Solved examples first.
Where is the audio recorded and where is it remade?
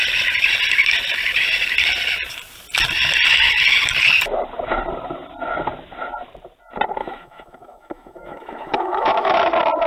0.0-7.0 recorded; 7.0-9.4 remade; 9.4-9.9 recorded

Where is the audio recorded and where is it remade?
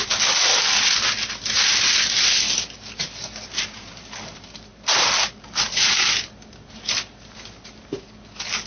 0.0-4.7 recorded; 4.7-7.0 remade; 7.0-8.7 recorded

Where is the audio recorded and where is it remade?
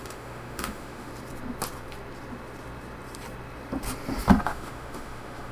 0.0-1.1 remade; 1.1-4.4 recorded; 4.4-5.5 remade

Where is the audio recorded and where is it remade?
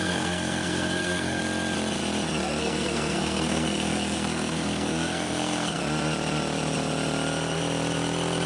0.0-1.4 remade; 1.4-2.6 recorded; 2.6-5.8 remade; 5.8-8.5 recorded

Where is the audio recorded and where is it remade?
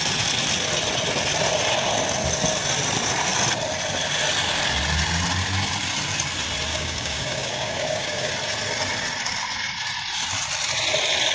0.0-6.7 recorded; 6.7-8.3 remade; 8.3-11.3 recorded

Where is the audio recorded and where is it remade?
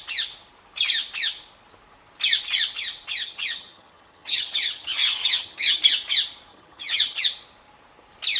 0.0-3.2 recorded; 3.2-5.8 remade; 5.8-6.5 recorded; 6.5-7.2 remade; 7.2-8.4 recorded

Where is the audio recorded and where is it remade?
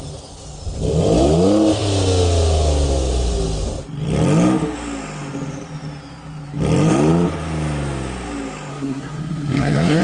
0.0-8.7 recorded; 8.7-10.0 remade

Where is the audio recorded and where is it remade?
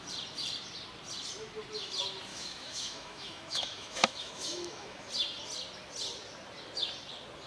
0.0-2.3 recorded; 2.3-5.1 remade; 5.1-7.5 recorded